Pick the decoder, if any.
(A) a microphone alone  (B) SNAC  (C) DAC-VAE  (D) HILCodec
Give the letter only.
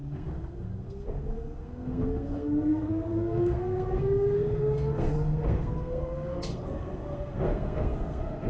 B